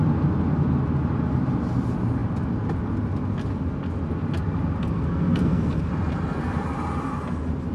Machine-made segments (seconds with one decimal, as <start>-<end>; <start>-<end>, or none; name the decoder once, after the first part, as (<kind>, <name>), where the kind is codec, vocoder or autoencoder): 4.8-5.9 (codec, SNAC)

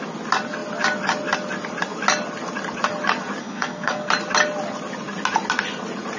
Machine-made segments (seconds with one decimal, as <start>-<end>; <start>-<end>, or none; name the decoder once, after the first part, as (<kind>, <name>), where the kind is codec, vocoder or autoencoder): 3.4-4.1 (codec, SNAC)

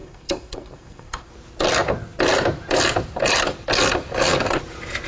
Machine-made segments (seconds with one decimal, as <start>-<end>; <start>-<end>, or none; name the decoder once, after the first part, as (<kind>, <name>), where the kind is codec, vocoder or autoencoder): 0.0-1.3 (codec, SNAC)

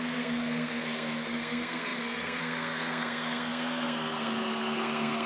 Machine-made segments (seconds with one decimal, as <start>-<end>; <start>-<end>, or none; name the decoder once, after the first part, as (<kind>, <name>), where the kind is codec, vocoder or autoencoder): 0.0-5.3 (codec, SNAC)

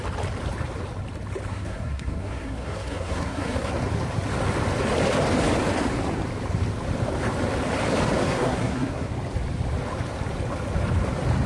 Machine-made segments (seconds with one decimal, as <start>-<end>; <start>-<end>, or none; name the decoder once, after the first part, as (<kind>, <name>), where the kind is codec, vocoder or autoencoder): 1.5-3.7 (codec, SNAC); 8.2-9.1